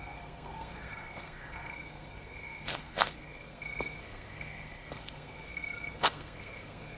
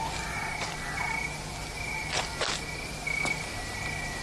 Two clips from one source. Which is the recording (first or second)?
second